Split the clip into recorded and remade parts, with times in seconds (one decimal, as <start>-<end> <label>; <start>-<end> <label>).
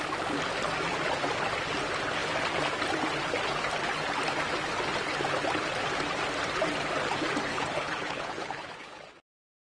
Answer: 0.0-7.5 recorded; 7.5-9.1 remade; 9.1-9.6 recorded